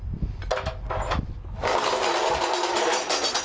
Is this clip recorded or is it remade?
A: recorded